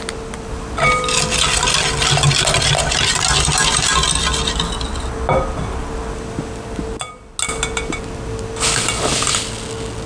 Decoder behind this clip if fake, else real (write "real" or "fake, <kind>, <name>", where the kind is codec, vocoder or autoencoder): real